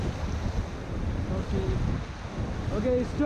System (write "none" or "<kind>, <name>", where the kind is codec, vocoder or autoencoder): none